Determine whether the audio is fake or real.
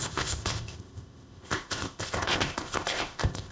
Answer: fake